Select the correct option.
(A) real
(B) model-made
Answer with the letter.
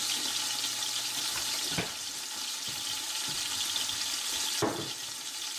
A